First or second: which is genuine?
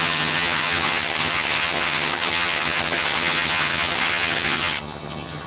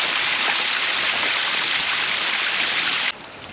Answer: second